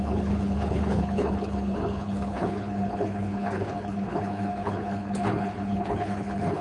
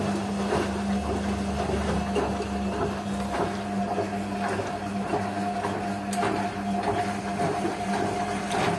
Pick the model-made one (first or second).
first